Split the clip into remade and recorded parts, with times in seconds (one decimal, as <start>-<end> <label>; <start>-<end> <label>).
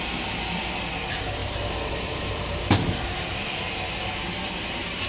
0.0-1.4 recorded; 1.4-3.6 remade; 3.6-5.1 recorded